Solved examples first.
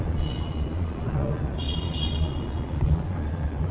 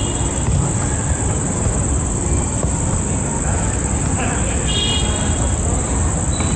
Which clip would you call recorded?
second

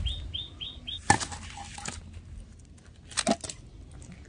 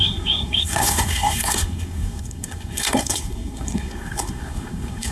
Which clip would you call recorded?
first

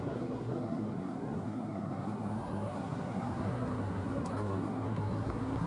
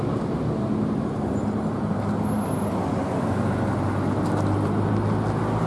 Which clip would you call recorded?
second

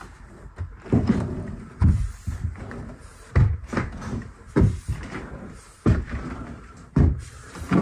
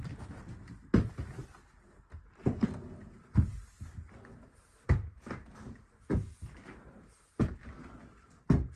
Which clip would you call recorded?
second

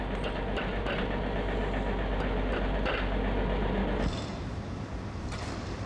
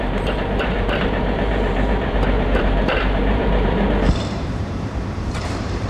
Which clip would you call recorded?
first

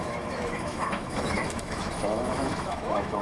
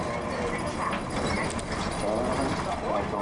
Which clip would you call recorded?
second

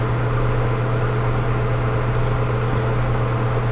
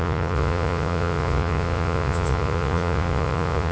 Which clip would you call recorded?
first